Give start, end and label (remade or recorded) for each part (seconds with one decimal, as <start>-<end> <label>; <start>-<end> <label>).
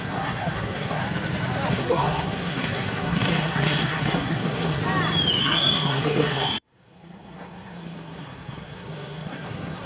0.0-1.0 remade; 1.0-1.7 recorded; 1.7-4.8 remade; 4.8-5.4 recorded; 5.4-9.9 remade